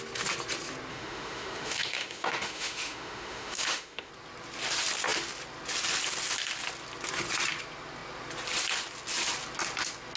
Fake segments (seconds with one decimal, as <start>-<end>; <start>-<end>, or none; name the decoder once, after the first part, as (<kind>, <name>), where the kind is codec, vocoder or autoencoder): 0.9-4.1 (autoencoder, DAC-VAE)